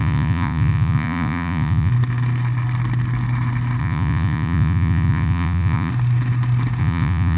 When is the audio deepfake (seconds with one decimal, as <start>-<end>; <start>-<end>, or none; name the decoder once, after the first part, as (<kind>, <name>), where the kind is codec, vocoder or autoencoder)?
0.0-1.9 (vocoder, Vocos); 3.8-5.9; 6.8-7.4